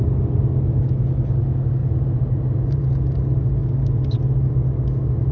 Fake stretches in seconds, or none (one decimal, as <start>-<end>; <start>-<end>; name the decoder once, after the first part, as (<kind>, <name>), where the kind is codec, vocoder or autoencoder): 1.8-2.8 (vocoder, BigVGAN v2)